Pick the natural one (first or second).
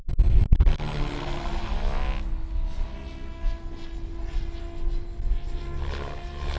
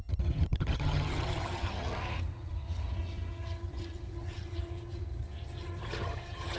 first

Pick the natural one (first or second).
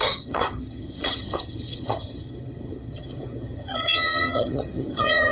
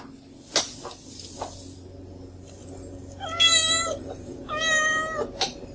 second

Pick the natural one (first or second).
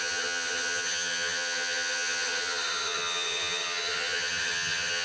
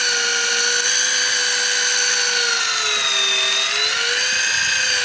second